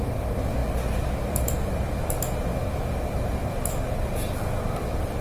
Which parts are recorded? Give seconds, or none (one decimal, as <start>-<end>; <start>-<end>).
0.0-5.2